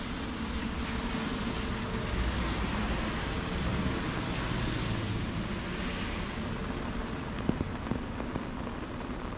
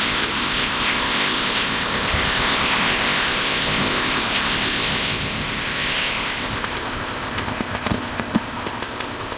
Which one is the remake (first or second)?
second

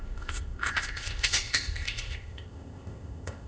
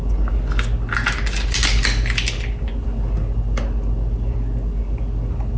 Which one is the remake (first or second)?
first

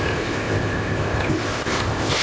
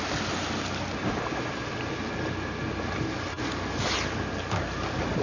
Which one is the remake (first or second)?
first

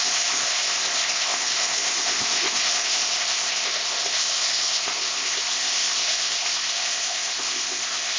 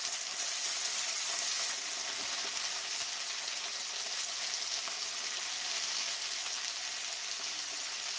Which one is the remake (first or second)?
first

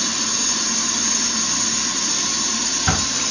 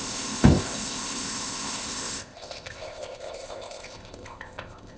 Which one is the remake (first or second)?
second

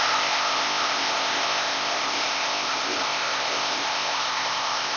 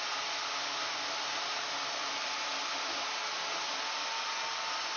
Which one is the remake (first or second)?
first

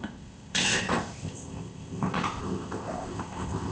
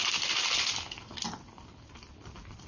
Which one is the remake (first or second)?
first